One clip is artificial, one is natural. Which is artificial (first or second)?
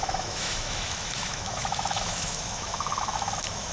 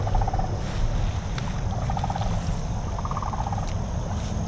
first